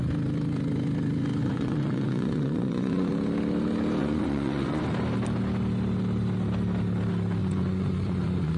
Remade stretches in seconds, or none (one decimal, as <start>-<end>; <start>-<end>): 1.4-3.1; 4.0-4.8; 7.4-8.6